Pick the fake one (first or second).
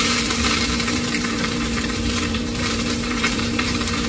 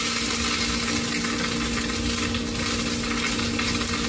first